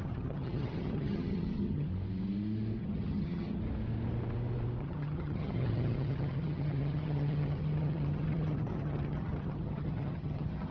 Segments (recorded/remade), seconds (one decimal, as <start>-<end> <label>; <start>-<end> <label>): 0.0-1.9 remade; 1.9-2.8 recorded; 2.8-3.6 remade; 3.6-4.8 recorded; 4.8-10.7 remade